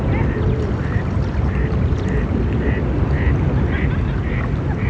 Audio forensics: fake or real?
real